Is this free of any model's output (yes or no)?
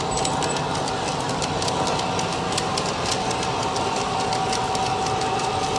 yes